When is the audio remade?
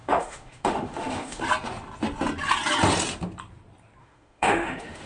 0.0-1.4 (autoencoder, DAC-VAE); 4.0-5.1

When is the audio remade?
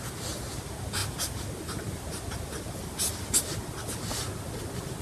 none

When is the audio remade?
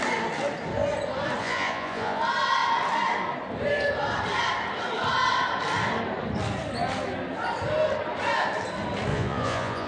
1.4-2.2 (vocoder, Vocos); 9.1-9.9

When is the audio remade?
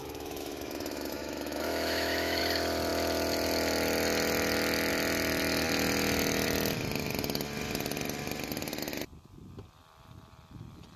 0.0-2.4 (autoencoder, DAC-VAE)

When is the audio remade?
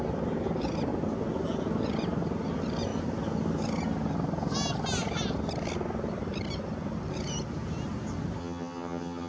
8.4-9.3 (vocoder, HiFi-GAN)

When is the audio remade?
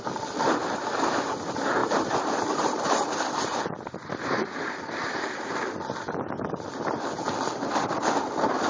1.8-3.6 (vocoder, BigVGAN v2)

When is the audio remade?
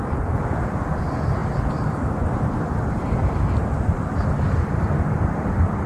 none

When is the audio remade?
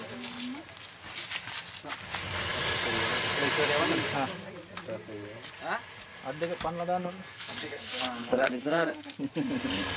7.0-9.2 (codec, SNAC)